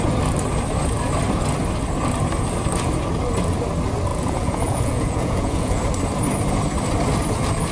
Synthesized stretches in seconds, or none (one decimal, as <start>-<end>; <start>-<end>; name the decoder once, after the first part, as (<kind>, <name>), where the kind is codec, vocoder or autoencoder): 4.1-5.8 (vocoder, Vocos)